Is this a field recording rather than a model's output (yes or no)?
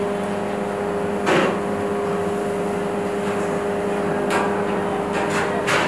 yes